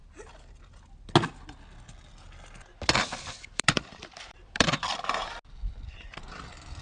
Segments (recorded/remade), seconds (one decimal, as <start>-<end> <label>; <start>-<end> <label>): 0.0-2.9 recorded; 2.9-5.2 remade; 5.2-6.3 recorded; 6.3-6.8 remade